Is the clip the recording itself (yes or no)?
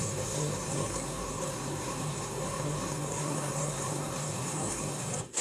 no